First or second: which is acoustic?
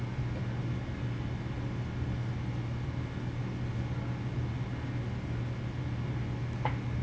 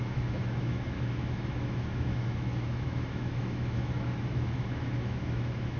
first